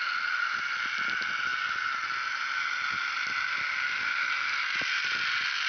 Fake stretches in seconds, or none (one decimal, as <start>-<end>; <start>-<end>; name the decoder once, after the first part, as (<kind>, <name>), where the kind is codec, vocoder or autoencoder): none